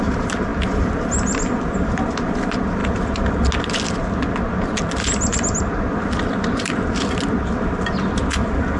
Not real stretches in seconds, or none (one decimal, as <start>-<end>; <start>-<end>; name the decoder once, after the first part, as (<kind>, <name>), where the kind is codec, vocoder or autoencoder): none